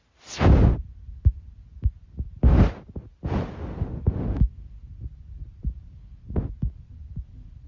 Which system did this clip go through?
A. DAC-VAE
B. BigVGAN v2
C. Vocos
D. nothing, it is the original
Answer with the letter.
D